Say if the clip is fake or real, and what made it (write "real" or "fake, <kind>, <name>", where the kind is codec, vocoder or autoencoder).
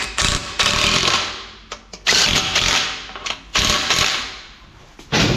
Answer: real